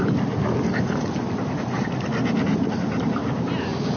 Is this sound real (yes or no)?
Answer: yes